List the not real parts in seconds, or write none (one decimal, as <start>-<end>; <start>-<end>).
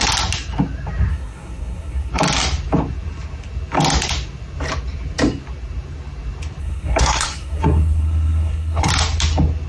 1.1-2.1; 6.6-8.9